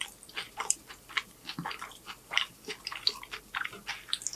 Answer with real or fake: real